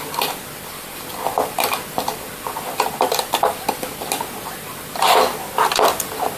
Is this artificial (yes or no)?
yes